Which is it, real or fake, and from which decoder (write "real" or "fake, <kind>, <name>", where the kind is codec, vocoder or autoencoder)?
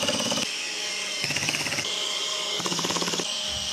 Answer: fake, codec, DAC